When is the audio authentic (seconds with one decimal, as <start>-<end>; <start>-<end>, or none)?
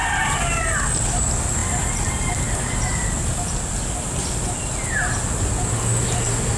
0.0-6.6